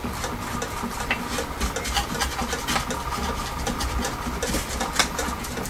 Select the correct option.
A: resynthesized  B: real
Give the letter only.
B